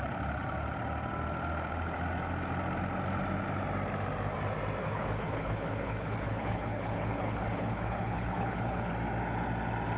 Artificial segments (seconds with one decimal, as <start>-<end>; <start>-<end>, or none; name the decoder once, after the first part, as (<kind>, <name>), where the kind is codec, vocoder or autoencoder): 4.8-8.9 (codec, HILCodec)